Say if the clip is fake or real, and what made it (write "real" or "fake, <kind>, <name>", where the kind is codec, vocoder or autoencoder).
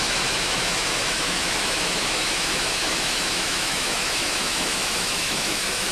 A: fake, autoencoder, DAC-VAE